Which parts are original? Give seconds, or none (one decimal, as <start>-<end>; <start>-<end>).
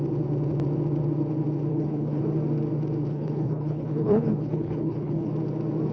0.0-1.7; 2.2-3.1; 5.3-5.9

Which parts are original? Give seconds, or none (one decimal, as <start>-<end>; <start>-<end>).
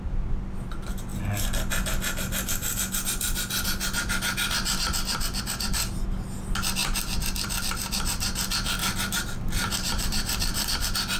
0.0-8.8; 10.7-11.2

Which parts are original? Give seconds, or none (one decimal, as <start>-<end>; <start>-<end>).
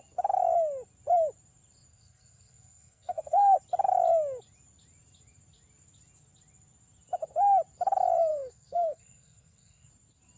0.0-1.9; 3.6-8.3; 9.9-10.4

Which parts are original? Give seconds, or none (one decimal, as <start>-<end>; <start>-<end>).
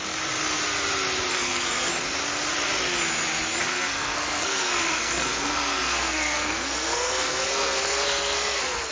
0.0-1.3; 1.9-3.6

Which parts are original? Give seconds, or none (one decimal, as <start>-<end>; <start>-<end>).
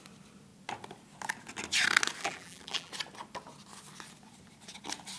0.0-2.2; 2.9-5.2